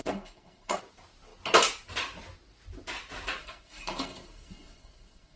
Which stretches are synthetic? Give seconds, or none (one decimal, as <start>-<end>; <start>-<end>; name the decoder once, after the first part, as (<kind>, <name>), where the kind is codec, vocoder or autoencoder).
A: 0.0-0.8 (codec, SNAC); 3.4-5.4